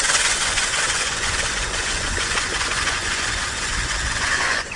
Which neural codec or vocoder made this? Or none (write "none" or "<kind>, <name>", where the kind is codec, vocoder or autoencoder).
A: vocoder, Vocos